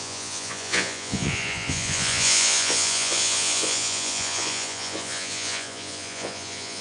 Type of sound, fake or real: fake